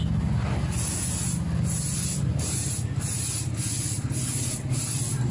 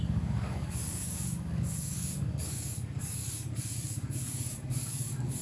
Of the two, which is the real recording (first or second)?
first